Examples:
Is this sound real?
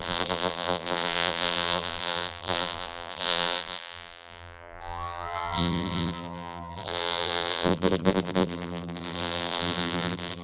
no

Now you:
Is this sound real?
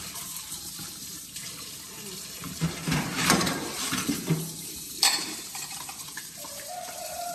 no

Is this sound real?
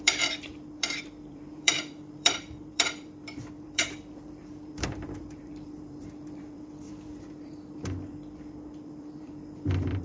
no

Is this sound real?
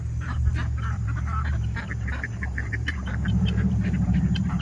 no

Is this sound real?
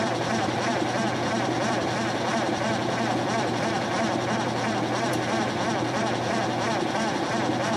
no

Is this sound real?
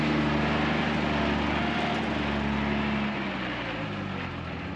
yes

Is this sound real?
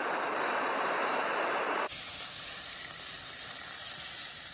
no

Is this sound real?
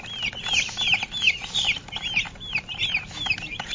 no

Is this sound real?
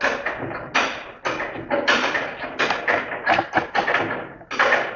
yes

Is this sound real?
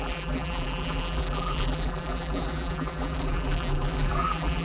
no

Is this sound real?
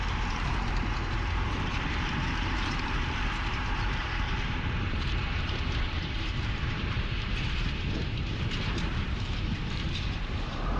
no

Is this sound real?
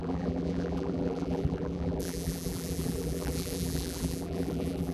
no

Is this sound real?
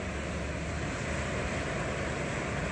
yes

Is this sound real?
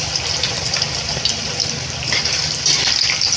no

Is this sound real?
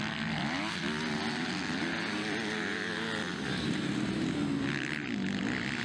yes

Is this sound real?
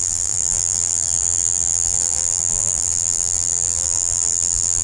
no